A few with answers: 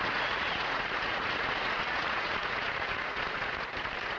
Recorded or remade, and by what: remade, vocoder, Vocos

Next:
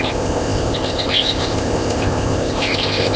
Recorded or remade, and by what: remade, codec, ZipCodec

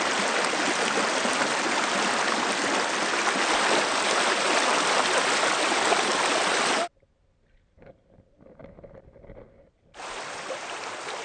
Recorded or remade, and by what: recorded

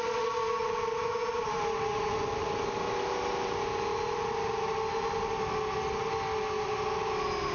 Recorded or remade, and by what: recorded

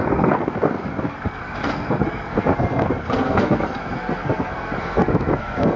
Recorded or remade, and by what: remade, codec, SNAC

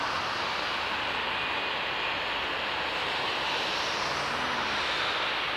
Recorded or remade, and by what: recorded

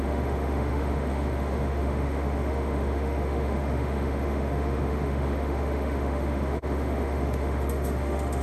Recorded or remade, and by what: remade, autoencoder, DAC-VAE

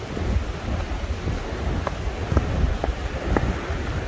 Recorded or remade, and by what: recorded